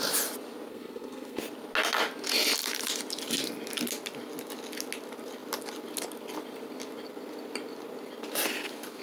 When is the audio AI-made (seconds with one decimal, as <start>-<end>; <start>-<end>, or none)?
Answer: 0.7-1.4